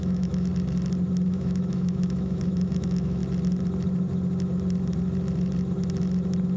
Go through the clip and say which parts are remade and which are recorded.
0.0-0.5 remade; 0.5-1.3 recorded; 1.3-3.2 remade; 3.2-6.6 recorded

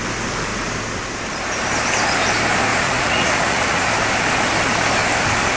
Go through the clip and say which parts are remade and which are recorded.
0.0-2.7 recorded; 2.7-3.9 remade; 3.9-5.6 recorded

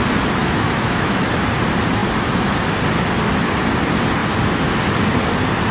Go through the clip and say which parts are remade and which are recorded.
0.0-0.4 recorded; 0.4-1.3 remade; 1.3-5.7 recorded

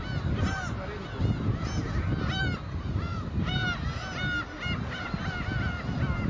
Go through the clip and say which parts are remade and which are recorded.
0.0-6.3 recorded

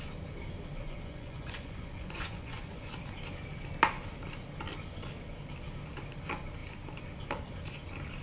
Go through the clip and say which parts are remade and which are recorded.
0.0-0.8 recorded; 0.8-2.9 remade; 2.9-8.2 recorded